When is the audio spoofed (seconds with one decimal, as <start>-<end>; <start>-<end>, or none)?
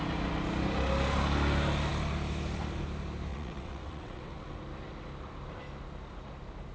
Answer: 3.3-4.6